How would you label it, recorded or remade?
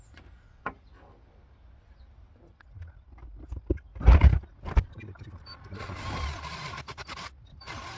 recorded